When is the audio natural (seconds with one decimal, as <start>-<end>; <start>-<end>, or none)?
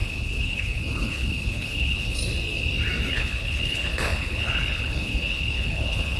2.2-3.1